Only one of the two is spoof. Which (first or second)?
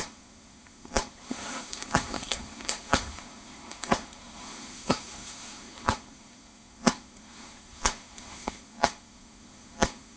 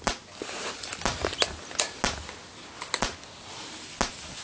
first